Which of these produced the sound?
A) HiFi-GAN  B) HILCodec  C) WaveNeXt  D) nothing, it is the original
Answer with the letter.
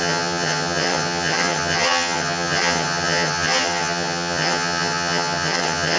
A